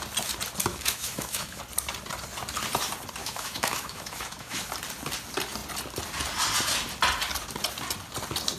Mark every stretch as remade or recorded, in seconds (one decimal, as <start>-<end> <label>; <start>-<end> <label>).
0.0-0.7 recorded; 0.7-1.6 remade; 1.6-3.2 recorded; 3.2-4.7 remade; 4.7-8.6 recorded